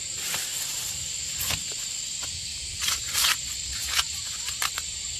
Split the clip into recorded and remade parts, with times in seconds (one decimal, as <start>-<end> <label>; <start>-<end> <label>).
0.0-0.5 recorded; 0.5-1.5 remade; 1.5-2.5 recorded; 2.5-3.0 remade; 3.0-3.8 recorded; 3.8-5.2 remade